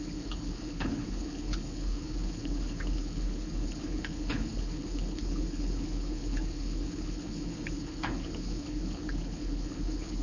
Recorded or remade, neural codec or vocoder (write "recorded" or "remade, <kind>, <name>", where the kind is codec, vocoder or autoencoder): remade, codec, HILCodec